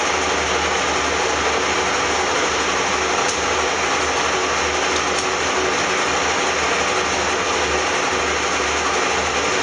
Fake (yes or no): no